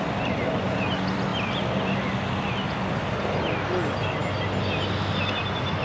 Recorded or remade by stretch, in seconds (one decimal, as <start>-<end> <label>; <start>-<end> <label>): 0.0-5.8 recorded